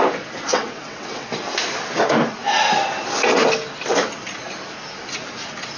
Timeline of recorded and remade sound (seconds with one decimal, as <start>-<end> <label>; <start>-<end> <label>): 0.0-0.5 recorded; 0.5-1.3 remade; 1.3-5.8 recorded